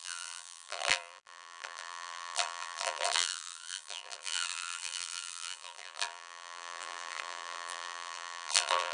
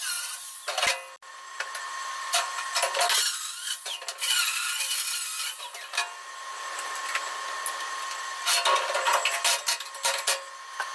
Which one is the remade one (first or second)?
first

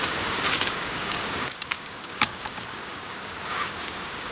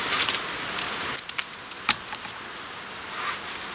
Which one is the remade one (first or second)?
first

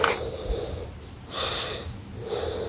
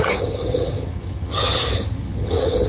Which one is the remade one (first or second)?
second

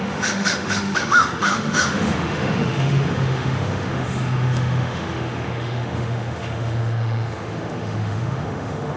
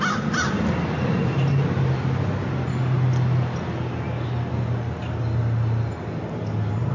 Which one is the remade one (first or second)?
first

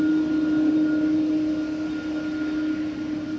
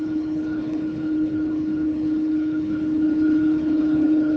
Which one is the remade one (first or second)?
second